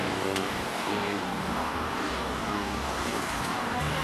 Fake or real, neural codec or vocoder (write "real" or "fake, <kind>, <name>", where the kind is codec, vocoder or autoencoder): fake, codec, DAC